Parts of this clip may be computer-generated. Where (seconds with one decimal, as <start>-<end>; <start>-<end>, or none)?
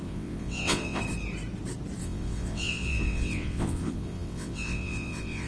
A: 0.0-1.0; 2.0-5.5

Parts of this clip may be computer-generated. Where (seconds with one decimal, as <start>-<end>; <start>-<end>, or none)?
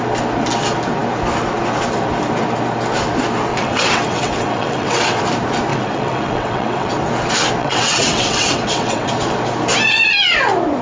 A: 3.5-5.2; 5.7-6.9; 7.6-9.1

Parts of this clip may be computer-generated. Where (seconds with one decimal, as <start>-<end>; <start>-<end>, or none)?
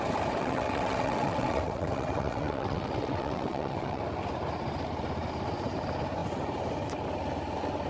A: 0.4-4.0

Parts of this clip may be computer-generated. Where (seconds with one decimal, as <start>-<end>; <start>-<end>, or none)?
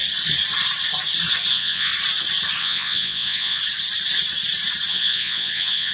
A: 1.5-1.9; 2.6-3.6; 4.9-5.9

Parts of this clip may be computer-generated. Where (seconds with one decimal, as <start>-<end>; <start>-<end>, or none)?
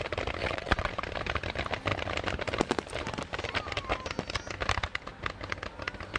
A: 0.4-0.9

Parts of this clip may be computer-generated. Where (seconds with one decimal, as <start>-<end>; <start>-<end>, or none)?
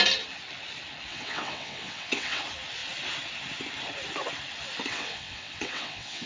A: 1.1-2.4; 4.9-6.3